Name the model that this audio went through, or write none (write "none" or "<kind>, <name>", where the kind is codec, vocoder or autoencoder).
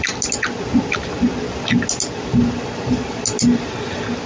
none